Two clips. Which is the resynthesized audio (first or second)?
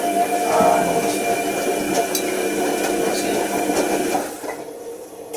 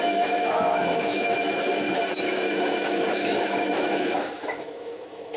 second